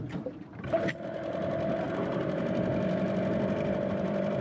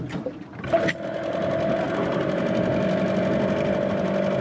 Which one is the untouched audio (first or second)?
second